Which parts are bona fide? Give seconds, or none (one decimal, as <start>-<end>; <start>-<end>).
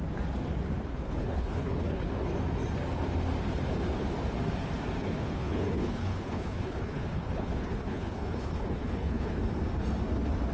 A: 0.0-0.9; 2.1-5.0; 9.4-10.5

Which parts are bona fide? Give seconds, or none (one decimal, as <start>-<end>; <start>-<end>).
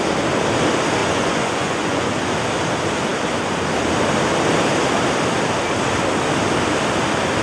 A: 0.0-1.0; 2.1-7.4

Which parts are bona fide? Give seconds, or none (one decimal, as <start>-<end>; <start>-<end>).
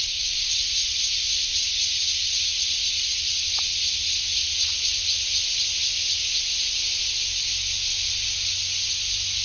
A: 0.5-9.4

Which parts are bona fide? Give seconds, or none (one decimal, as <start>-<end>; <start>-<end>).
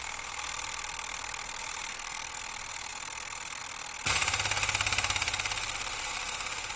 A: 0.0-1.9; 2.4-6.8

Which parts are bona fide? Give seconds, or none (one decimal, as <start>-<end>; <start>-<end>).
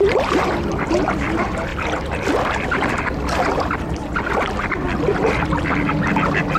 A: none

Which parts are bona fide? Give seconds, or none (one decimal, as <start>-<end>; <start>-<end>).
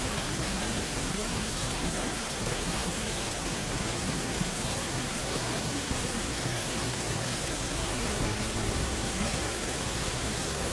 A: none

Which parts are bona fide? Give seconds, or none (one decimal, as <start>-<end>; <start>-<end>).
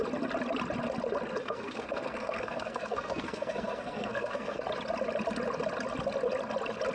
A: 0.0-1.4; 4.6-6.9